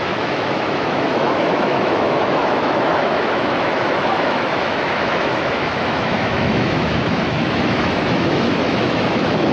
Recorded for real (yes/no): no